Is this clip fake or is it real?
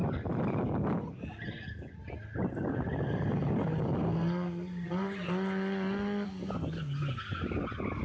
real